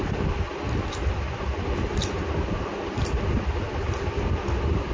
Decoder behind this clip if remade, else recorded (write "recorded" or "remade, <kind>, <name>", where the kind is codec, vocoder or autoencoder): recorded